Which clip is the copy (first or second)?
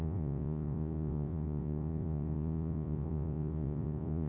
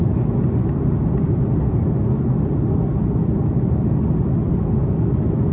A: first